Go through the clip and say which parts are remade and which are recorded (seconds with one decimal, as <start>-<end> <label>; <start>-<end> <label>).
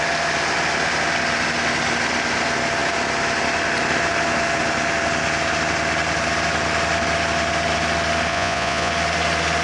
0.0-8.3 recorded; 8.3-8.9 remade; 8.9-9.6 recorded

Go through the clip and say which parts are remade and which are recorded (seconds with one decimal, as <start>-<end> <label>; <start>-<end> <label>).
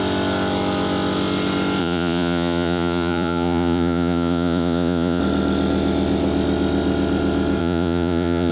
0.0-1.8 recorded; 1.8-5.2 remade; 5.2-7.6 recorded; 7.6-8.5 remade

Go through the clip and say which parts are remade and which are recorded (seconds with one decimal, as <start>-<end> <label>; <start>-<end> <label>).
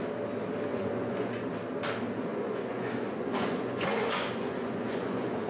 0.0-0.7 recorded; 0.7-1.5 remade; 1.5-2.3 recorded; 2.3-5.5 remade